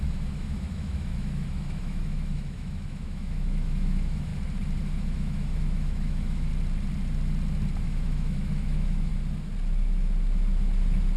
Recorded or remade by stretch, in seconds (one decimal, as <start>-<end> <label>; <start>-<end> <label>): 0.0-4.3 remade; 4.3-4.8 recorded; 4.8-6.5 remade; 6.5-7.8 recorded; 7.8-9.1 remade; 9.1-11.2 recorded